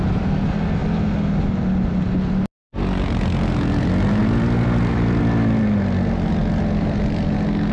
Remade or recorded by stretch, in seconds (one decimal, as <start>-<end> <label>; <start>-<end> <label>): 0.0-4.2 recorded; 4.2-5.2 remade; 5.2-7.7 recorded